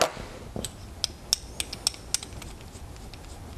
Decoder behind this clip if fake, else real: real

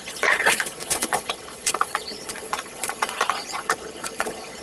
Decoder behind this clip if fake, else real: fake, vocoder, Vocos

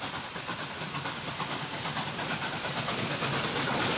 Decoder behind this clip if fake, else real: real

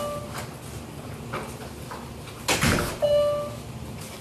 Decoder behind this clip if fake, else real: real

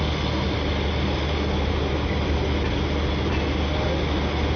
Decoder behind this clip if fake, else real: real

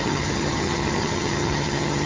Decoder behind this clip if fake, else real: fake, vocoder, HiFi-GAN